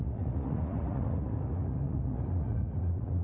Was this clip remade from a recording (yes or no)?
yes